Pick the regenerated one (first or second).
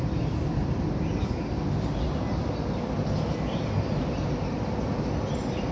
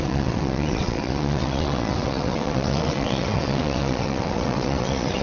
second